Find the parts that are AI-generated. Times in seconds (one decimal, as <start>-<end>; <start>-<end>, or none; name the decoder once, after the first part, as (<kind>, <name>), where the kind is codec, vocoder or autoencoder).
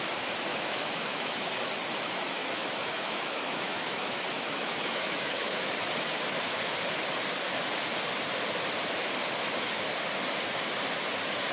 0.5-1.5 (autoencoder, DAC-VAE); 2.4-5.7